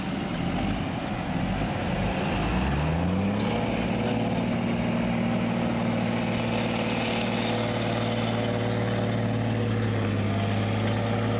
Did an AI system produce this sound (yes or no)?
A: no